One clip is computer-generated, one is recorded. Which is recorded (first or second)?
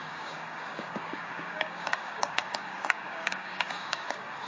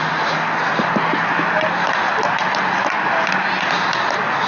second